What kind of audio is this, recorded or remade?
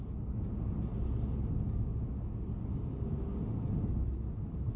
recorded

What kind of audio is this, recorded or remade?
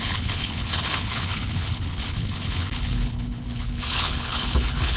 remade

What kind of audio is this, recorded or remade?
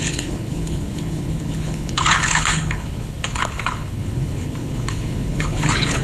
remade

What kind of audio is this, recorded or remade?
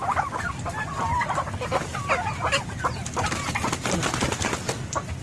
recorded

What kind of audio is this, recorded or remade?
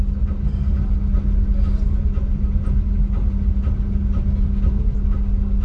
recorded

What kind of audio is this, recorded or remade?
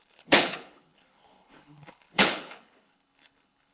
remade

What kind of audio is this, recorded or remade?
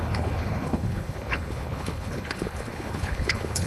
remade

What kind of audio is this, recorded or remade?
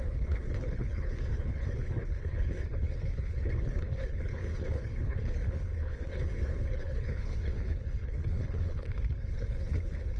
remade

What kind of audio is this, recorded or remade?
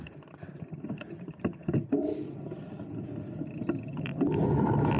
recorded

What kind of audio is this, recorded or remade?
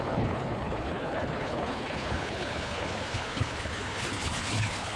remade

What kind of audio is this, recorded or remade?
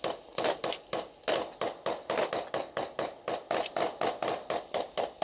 recorded